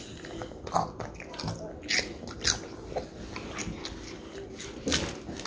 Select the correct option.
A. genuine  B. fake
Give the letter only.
A